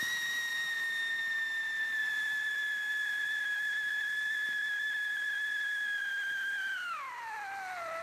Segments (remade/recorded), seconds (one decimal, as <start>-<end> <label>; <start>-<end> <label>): 0.0-2.0 recorded; 2.0-6.1 remade; 6.1-8.0 recorded